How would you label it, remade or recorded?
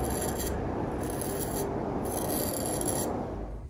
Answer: recorded